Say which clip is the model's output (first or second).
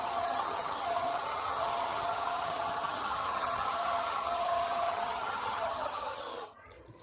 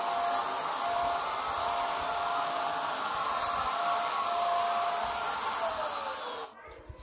first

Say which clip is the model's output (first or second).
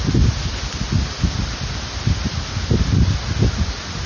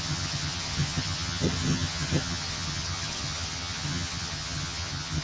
second